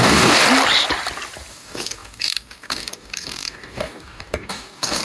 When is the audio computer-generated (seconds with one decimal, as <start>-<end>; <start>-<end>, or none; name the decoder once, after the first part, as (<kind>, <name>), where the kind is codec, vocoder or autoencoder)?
0.0-0.4 (codec, DAC); 1.5-5.0

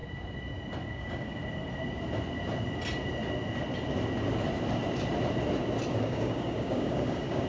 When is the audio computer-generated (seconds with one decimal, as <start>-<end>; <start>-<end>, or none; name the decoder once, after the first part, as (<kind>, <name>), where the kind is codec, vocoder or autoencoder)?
0.9-1.4 (codec, DAC); 5.9-7.5